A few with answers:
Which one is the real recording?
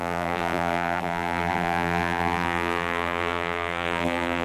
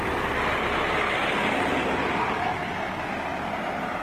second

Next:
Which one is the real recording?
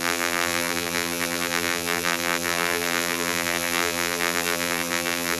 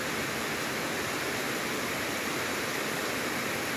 second